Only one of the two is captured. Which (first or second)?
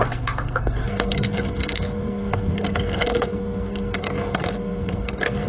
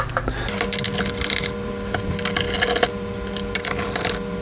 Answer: second